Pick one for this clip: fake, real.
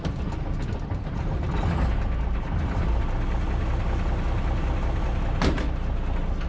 real